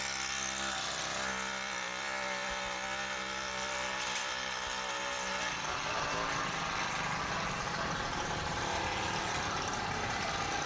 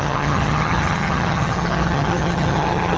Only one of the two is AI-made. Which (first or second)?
second